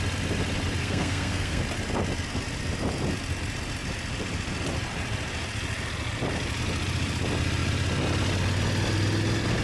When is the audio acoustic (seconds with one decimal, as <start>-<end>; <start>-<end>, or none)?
0.0-0.8; 1.6-9.6